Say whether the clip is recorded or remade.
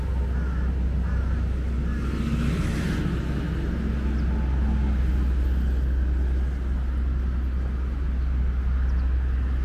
recorded